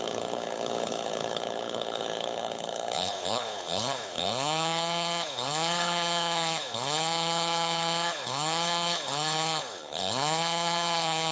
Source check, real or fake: fake